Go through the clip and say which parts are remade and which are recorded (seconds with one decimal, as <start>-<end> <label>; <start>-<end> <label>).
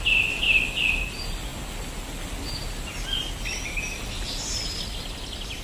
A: 0.0-5.6 recorded